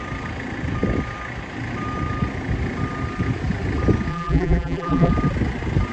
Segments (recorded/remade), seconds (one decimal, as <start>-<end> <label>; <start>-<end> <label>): 0.0-4.1 recorded; 4.1-5.1 remade; 5.1-5.9 recorded